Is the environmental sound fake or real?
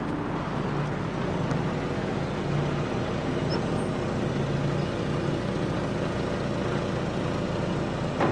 real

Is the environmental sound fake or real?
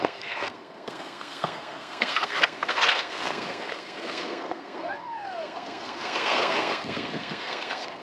fake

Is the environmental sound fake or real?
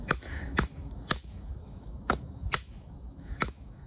fake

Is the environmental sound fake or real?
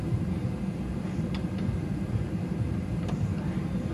fake